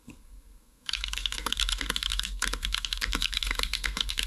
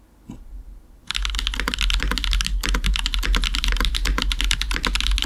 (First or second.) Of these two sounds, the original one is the second